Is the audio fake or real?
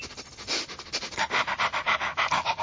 real